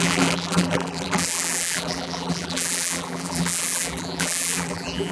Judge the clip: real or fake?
fake